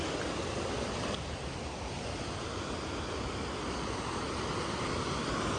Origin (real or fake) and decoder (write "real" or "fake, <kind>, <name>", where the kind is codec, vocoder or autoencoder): real